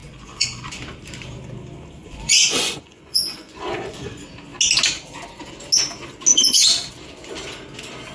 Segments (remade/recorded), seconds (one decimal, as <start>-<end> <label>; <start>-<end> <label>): 0.0-0.8 remade; 0.8-2.0 recorded; 2.0-4.1 remade; 4.1-6.3 recorded; 6.3-6.9 remade; 6.9-8.1 recorded